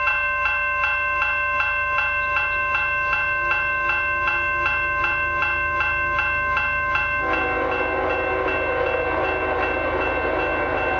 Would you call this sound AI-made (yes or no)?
no